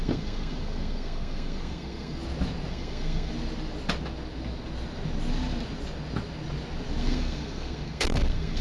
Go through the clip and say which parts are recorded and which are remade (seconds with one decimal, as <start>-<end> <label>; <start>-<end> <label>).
0.0-2.2 remade; 2.2-2.7 recorded; 2.7-3.3 remade; 3.3-7.0 recorded; 7.0-8.6 remade